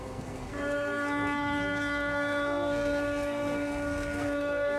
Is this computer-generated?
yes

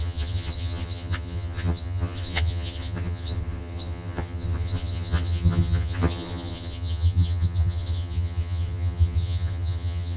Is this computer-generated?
yes